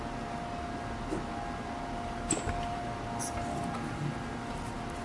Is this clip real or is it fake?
real